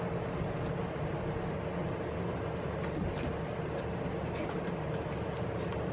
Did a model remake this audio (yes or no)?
no